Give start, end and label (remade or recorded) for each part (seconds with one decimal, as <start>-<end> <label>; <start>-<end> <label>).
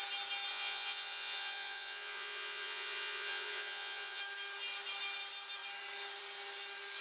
0.0-0.5 recorded; 0.5-4.2 remade; 4.2-7.0 recorded